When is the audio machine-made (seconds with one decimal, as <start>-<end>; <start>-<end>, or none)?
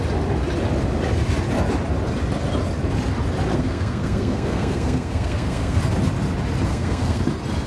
3.5-5.8; 6.7-7.2